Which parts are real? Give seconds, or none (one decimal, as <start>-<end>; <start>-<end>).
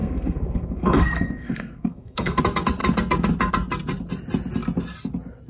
2.4-5.5